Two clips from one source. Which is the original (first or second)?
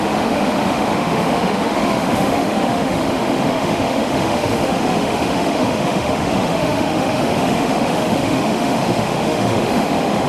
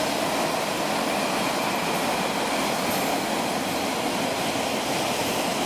second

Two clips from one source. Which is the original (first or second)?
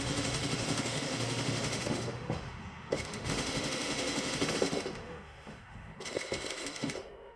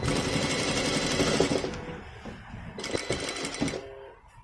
second